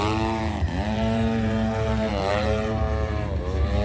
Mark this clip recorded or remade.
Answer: remade